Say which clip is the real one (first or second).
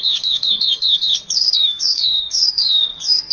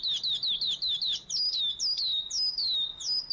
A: second